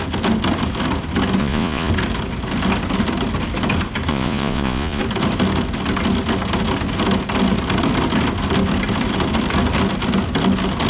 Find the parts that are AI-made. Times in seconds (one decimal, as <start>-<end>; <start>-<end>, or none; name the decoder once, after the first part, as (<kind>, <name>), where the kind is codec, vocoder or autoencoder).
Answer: 1.4-1.9 (vocoder, Vocos); 4.1-5.0